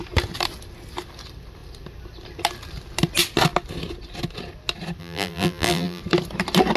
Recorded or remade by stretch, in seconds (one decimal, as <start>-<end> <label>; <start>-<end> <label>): 0.0-5.0 recorded; 5.0-6.0 remade; 6.0-6.8 recorded